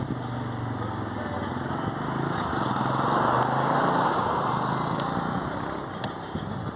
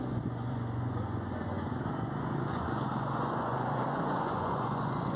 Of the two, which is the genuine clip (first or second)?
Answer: first